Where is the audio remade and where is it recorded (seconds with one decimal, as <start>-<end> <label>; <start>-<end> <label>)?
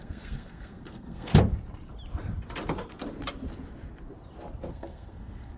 0.0-1.3 remade; 1.3-4.7 recorded; 4.7-5.6 remade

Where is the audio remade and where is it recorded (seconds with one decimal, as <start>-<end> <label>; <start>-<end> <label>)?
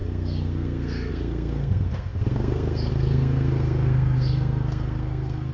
0.0-5.5 remade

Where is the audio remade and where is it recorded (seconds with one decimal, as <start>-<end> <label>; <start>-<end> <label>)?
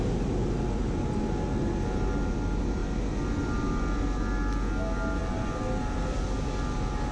0.0-7.1 recorded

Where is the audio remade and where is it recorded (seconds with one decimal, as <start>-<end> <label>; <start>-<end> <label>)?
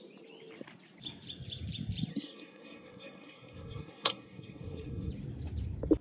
0.0-2.1 recorded; 2.1-5.1 remade; 5.1-6.0 recorded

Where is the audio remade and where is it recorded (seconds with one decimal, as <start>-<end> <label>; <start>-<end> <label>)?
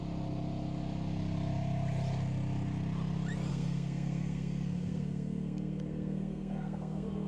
0.0-3.5 recorded; 3.5-7.3 remade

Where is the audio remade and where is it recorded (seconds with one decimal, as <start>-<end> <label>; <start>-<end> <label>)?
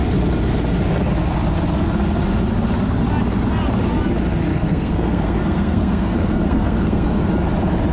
0.0-4.5 recorded; 4.5-7.3 remade; 7.3-7.9 recorded